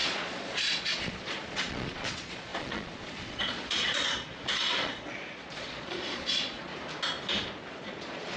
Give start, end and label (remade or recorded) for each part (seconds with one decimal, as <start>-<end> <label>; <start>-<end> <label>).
0.0-6.7 remade; 6.7-7.7 recorded; 7.7-8.4 remade